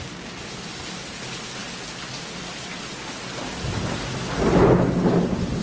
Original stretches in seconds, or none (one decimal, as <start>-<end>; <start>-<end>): 0.0-5.6